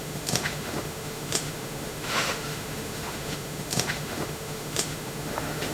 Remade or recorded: remade